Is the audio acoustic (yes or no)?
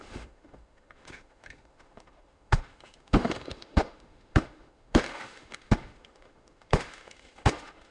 no